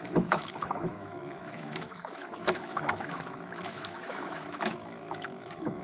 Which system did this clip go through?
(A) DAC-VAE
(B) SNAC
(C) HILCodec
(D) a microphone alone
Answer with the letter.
A